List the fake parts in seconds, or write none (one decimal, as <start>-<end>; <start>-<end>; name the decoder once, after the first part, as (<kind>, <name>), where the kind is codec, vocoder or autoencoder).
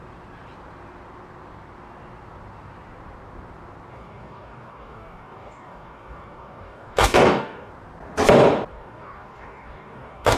3.9-7.7 (codec, DAC); 8.7-10.4